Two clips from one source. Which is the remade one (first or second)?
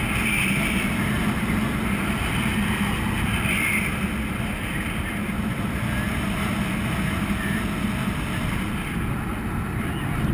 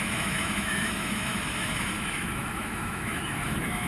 second